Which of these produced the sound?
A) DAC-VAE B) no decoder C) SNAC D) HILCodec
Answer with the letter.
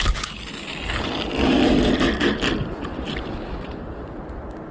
B